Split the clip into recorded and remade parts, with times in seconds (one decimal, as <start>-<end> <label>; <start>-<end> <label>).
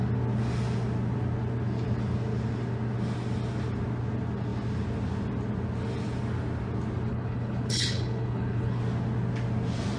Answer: 0.0-7.1 recorded; 7.1-8.8 remade; 8.8-10.0 recorded